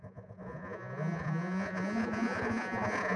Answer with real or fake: fake